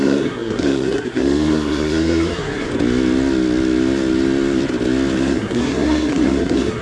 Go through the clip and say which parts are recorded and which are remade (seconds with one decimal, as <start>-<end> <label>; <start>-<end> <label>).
0.0-2.7 remade; 2.7-5.2 recorded; 5.2-6.8 remade